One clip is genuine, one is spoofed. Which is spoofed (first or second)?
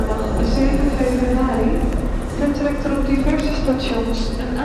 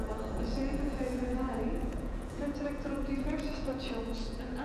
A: second